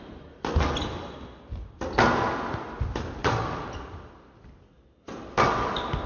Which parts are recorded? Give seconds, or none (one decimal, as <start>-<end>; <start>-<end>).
0.0-3.2; 4.1-6.1

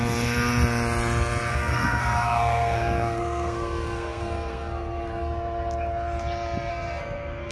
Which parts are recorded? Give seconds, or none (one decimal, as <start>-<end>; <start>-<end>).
0.0-1.5; 5.0-6.7

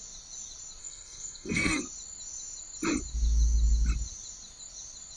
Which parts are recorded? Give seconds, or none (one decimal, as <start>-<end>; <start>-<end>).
0.0-0.8; 1.8-5.2

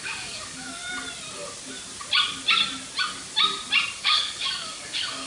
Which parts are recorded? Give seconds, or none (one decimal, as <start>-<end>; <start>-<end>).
0.8-4.0

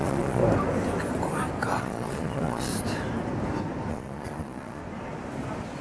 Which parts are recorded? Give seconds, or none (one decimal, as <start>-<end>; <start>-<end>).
0.4-1.8; 2.7-3.9; 4.8-5.8

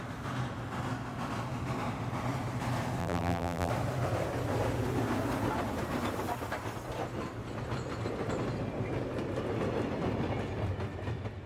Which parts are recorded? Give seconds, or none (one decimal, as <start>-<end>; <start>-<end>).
0.0-3.0; 3.7-11.5

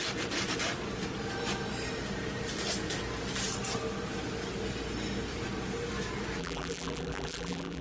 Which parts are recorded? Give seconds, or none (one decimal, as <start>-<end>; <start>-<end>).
0.0-6.4